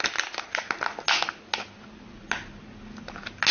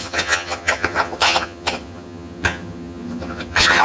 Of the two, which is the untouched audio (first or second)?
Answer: first